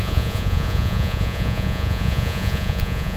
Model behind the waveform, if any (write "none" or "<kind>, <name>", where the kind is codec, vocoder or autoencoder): vocoder, Vocos